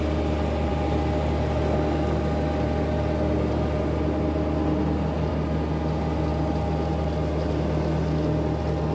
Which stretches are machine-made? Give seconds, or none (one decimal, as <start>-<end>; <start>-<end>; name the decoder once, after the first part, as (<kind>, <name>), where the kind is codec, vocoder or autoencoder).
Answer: none